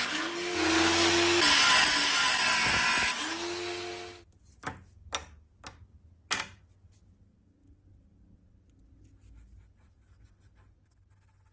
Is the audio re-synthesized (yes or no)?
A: no